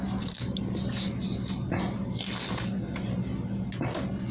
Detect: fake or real real